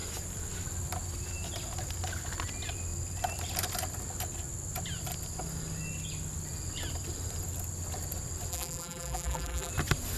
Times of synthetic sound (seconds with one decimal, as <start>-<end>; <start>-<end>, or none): 8.5-9.7